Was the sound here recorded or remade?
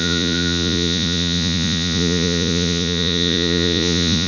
remade